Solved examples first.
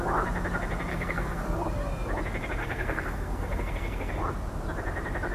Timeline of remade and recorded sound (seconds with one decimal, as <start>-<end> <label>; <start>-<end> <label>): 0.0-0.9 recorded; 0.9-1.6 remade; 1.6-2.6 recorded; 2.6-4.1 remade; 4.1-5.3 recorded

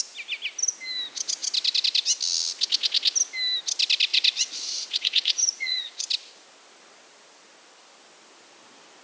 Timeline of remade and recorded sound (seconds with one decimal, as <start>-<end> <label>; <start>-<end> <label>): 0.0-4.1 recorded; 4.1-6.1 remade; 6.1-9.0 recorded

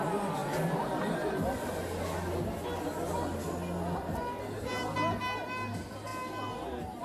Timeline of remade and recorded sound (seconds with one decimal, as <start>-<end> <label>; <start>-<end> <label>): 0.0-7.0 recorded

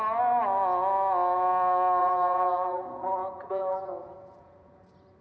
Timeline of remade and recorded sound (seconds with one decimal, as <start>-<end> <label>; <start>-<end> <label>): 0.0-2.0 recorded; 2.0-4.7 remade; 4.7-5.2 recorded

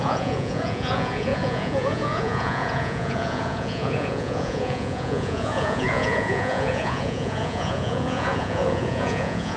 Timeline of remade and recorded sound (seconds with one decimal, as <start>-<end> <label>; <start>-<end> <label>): 0.0-9.6 remade